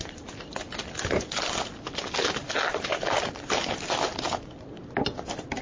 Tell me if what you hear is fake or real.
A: real